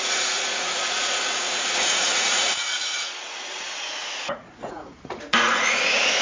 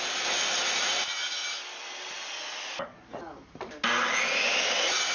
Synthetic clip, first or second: first